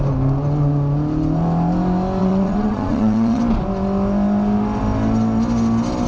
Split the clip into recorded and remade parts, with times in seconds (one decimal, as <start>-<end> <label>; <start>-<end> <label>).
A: 0.0-2.2 recorded; 2.2-3.4 remade; 3.4-6.1 recorded